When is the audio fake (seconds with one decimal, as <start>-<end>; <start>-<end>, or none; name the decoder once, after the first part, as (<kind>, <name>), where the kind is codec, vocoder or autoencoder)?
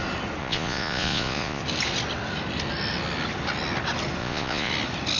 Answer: 0.4-1.6 (vocoder, Vocos); 4.2-4.7